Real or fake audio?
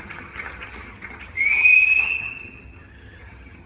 fake